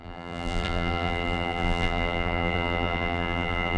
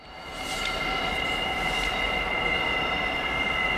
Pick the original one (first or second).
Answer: second